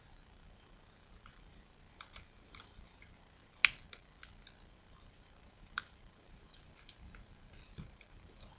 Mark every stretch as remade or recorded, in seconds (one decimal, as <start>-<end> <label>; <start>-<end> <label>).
0.0-3.6 remade; 3.6-4.7 recorded; 4.7-8.6 remade